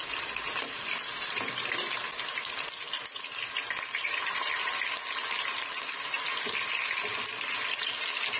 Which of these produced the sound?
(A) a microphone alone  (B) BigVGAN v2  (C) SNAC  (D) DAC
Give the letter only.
A